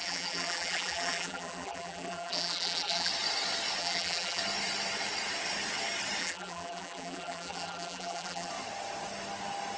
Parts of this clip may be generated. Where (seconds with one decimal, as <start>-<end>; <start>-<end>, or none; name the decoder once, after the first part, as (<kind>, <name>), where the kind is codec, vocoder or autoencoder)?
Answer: 0.0-3.1 (vocoder, BigVGAN v2); 3.8-4.4; 6.2-8.5